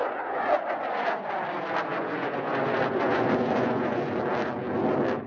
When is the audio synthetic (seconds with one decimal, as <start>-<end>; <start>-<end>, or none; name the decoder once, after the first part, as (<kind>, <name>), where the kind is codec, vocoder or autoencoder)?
0.0-1.3 (vocoder, Vocos); 1.9-4.2